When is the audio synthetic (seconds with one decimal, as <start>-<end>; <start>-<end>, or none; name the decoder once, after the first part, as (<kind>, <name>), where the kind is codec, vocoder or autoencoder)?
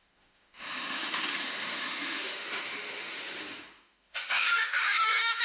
0.0-5.4 (autoencoder, DAC-VAE)